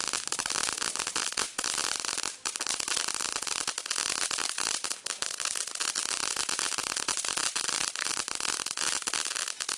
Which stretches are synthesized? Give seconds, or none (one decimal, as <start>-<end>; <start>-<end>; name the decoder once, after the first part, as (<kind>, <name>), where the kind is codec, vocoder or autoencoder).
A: none